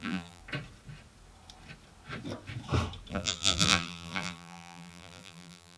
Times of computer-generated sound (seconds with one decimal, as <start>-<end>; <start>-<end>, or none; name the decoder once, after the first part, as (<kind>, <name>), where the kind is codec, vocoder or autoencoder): 0.0-0.4 (vocoder, BigVGAN v2); 3.1-5.8